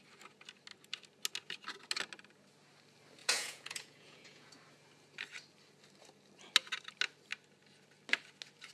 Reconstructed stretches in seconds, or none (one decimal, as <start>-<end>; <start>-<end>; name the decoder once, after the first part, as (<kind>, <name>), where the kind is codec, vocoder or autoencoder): 3.2-4.5 (vocoder, Vocos)